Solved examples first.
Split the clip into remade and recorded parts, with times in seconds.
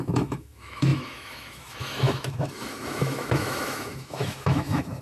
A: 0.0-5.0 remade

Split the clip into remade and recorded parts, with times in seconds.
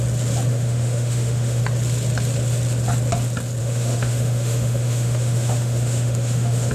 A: 0.0-0.5 recorded; 0.5-1.6 remade; 1.6-3.6 recorded; 3.6-6.7 remade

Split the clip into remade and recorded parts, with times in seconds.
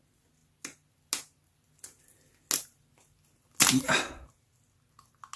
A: 0.0-5.4 recorded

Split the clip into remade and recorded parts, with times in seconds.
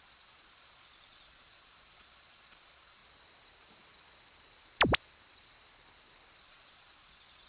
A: 0.0-3.0 remade; 3.0-6.4 recorded; 6.4-7.5 remade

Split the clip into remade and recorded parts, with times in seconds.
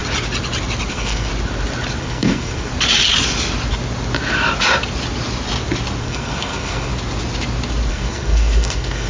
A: 0.0-0.9 recorded; 0.9-1.3 remade; 1.3-2.0 recorded; 2.0-2.7 remade; 2.7-6.0 recorded; 6.0-6.9 remade; 6.9-7.9 recorded; 7.9-9.1 remade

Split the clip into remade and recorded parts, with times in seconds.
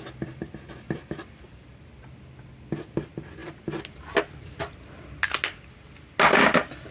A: 0.0-6.9 recorded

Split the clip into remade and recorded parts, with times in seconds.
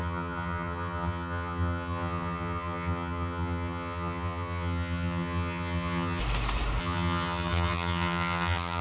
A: 0.0-6.2 remade; 6.2-6.8 recorded; 6.8-8.8 remade